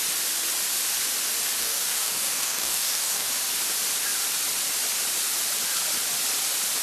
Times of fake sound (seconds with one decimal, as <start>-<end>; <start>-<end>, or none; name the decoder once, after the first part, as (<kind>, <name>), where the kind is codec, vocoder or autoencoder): 1.6-3.3 (codec, DAC)

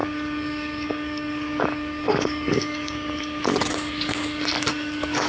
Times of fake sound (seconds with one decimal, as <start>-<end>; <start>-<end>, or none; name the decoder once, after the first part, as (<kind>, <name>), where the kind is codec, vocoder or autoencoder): 0.0-5.3 (codec, DAC)

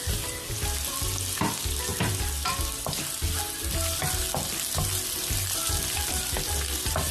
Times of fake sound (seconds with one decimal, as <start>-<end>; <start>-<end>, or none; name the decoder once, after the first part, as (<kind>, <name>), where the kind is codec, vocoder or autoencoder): none

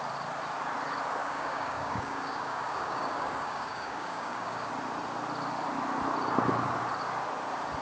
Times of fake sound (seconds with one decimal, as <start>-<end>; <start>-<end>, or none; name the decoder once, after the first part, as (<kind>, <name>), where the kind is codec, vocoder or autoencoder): 1.2-4.7 (codec, DAC)

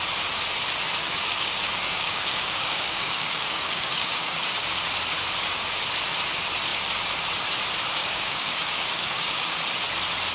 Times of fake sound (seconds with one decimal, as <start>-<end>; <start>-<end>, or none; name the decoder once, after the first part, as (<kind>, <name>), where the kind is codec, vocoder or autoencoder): 1.0-4.5 (codec, DAC); 8.0-9.5

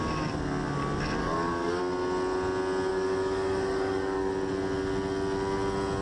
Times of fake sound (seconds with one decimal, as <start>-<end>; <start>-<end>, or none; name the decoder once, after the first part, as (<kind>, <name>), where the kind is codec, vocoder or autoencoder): 1.2-1.8 (codec, DAC); 2.9-4.3